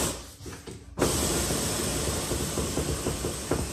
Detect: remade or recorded recorded